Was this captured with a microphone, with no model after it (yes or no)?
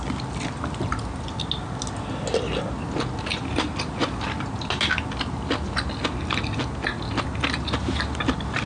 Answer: yes